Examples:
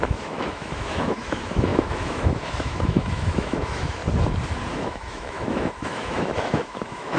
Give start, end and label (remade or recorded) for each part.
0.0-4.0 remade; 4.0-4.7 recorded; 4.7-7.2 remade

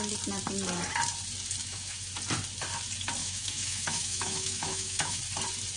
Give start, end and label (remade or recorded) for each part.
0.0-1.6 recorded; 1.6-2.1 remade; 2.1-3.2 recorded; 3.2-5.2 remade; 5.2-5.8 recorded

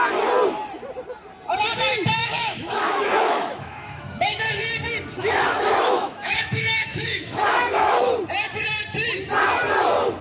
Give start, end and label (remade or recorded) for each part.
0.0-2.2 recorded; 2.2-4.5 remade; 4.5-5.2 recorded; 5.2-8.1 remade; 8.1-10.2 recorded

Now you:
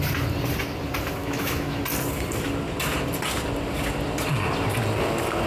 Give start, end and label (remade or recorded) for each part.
0.0-1.2 recorded; 1.2-1.8 remade; 1.8-5.5 recorded

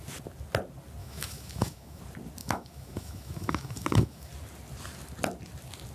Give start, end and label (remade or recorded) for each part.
0.0-1.0 recorded; 1.0-2.0 remade; 2.0-2.4 recorded; 2.4-4.3 remade; 4.3-5.9 recorded